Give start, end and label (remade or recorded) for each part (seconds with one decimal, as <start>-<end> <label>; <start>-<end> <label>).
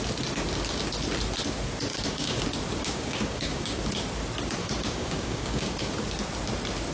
0.0-1.9 recorded; 1.9-2.4 remade; 2.4-2.8 recorded; 2.8-3.8 remade; 3.8-4.6 recorded; 4.6-5.9 remade; 5.9-6.9 recorded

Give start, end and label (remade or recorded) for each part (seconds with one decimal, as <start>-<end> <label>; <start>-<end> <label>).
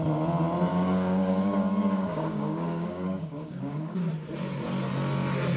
0.0-0.7 recorded; 0.7-4.1 remade; 4.1-5.6 recorded